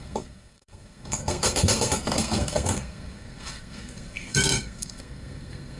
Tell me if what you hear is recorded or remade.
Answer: remade